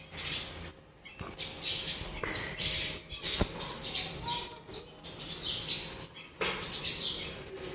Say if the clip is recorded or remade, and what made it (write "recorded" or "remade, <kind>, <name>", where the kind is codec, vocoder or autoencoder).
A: recorded